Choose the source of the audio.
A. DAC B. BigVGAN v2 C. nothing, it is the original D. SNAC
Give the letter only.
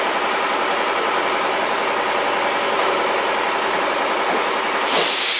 C